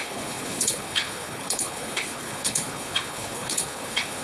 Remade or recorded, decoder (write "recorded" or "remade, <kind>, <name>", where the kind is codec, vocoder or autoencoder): remade, codec, HILCodec